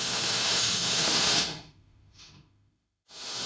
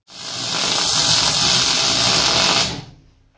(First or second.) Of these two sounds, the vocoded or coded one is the first